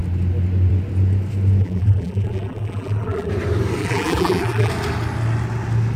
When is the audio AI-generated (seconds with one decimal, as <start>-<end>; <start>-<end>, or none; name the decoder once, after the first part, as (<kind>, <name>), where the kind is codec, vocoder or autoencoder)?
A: 1.6-3.3 (vocoder, BigVGAN v2); 3.8-4.7